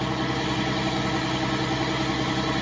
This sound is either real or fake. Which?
real